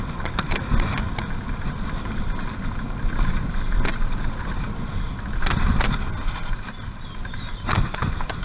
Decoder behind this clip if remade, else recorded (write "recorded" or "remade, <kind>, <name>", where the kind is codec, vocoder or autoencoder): recorded